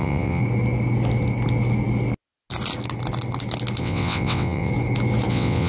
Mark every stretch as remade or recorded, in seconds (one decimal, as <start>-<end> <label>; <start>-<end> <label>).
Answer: 0.0-0.4 remade; 0.4-3.8 recorded; 3.8-4.7 remade; 4.7-5.3 recorded; 5.3-5.7 remade